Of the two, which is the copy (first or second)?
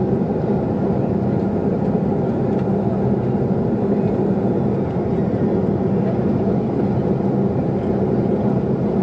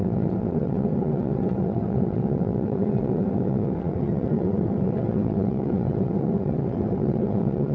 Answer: second